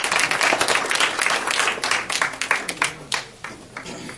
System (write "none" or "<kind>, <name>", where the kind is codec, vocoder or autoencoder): none